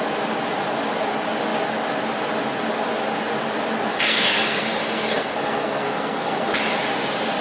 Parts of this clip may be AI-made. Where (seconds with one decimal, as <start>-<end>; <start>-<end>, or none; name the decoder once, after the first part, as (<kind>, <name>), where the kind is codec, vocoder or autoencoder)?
3.9-6.5 (codec, SNAC)